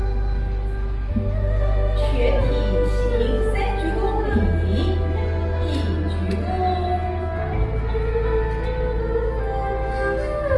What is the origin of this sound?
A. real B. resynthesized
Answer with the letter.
A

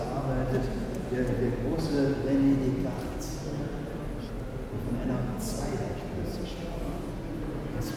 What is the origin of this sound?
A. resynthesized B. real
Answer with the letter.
B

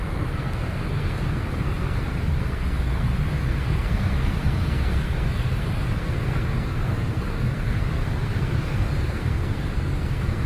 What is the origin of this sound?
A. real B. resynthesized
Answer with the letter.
B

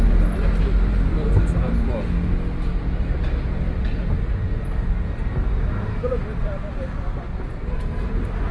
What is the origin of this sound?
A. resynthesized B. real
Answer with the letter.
B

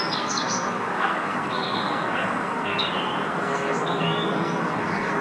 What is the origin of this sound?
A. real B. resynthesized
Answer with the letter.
B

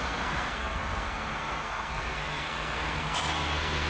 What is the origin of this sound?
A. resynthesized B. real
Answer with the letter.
A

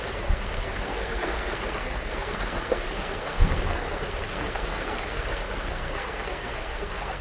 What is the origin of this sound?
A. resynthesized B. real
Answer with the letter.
A